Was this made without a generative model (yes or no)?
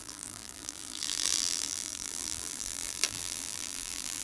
no